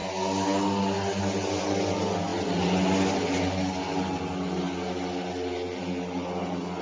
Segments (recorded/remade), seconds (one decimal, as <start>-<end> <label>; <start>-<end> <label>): 0.0-6.8 recorded